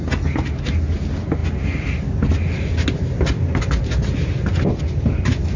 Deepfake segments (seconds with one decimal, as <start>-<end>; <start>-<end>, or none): none